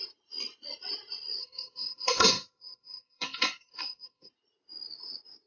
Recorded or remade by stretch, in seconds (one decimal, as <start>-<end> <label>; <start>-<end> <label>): 0.0-1.4 recorded; 1.4-4.3 remade; 4.3-5.5 recorded